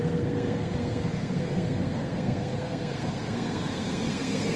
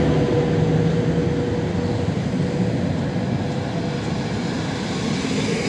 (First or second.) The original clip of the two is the second